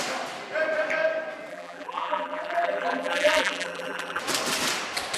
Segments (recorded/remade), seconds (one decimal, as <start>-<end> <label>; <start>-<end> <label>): 0.0-1.5 recorded; 1.5-4.2 remade; 4.2-5.2 recorded